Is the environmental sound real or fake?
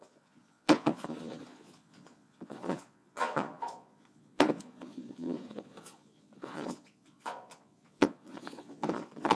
fake